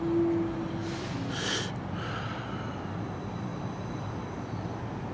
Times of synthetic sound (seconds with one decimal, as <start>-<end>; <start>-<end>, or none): none